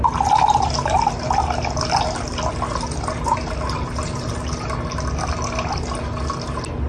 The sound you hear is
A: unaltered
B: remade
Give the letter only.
A